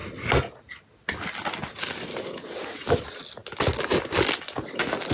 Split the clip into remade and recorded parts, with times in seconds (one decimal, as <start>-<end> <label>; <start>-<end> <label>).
0.0-5.1 recorded

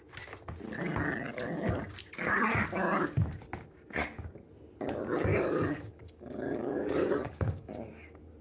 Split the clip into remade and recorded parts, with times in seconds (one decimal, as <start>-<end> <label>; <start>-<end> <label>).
0.0-5.3 recorded; 5.3-7.7 remade; 7.7-8.4 recorded

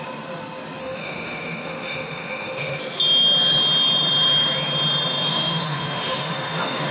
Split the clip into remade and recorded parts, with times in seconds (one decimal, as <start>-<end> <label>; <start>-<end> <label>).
0.0-0.8 recorded; 0.8-2.8 remade; 2.8-5.3 recorded; 5.3-6.9 remade

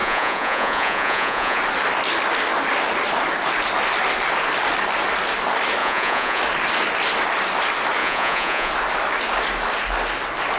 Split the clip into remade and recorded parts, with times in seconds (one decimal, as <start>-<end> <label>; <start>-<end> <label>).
0.0-1.6 remade; 1.6-5.8 recorded; 5.8-6.4 remade; 6.4-8.0 recorded; 8.0-8.7 remade; 8.7-10.6 recorded

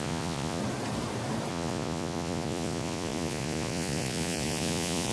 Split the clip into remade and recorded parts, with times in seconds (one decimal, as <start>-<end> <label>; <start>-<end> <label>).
0.0-0.6 remade; 0.6-1.5 recorded; 1.5-5.1 remade

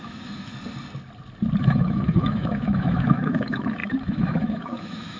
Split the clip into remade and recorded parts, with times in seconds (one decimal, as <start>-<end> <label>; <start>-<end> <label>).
0.0-0.5 remade; 0.5-1.6 recorded; 1.6-5.2 remade